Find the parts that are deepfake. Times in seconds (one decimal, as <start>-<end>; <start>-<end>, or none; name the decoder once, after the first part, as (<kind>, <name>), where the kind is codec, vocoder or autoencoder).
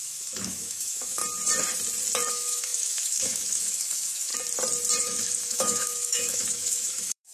0.0-1.2 (autoencoder, DAC-VAE); 2.3-4.3; 5.0-7.3